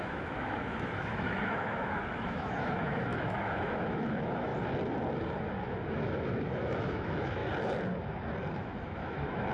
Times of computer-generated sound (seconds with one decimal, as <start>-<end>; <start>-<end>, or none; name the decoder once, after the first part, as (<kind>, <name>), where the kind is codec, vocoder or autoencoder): 0.0-4.5 (autoencoder, DAC-VAE); 5.9-7.4; 8.6-9.5